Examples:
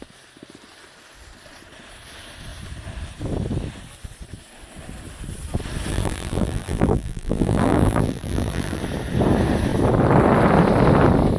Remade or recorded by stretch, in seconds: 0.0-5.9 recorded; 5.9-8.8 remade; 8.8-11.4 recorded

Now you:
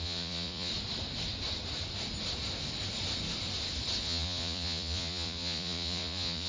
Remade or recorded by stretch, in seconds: 0.0-0.7 remade; 0.7-4.0 recorded; 4.0-6.5 remade

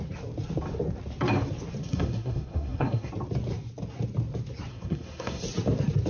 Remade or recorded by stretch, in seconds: 0.0-1.8 recorded; 1.8-3.1 remade; 3.1-4.7 recorded; 4.7-5.4 remade; 5.4-6.1 recorded

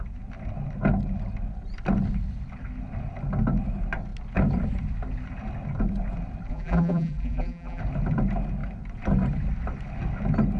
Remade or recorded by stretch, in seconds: 0.0-6.5 recorded; 6.5-7.8 remade; 7.8-10.6 recorded

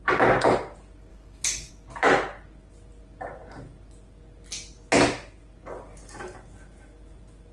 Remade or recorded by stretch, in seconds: 0.0-1.1 recorded; 1.1-1.7 remade; 1.7-7.5 recorded